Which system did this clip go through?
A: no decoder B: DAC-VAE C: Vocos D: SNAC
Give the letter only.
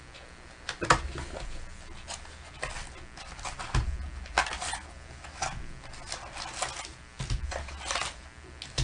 A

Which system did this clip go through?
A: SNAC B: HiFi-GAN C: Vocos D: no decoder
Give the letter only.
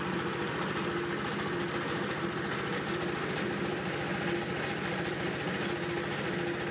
D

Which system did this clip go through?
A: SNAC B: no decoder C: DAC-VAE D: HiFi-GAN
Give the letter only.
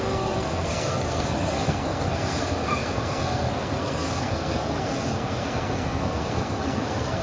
A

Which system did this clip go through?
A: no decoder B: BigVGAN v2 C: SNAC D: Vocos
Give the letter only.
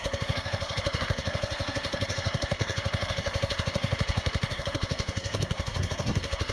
C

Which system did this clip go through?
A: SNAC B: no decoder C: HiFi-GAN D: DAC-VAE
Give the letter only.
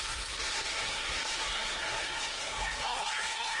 A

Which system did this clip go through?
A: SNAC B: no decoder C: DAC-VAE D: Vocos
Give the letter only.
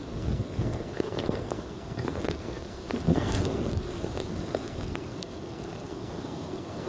A